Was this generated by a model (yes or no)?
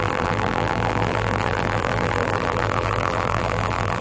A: yes